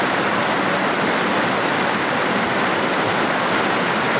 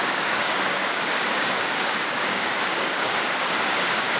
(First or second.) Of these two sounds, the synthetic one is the second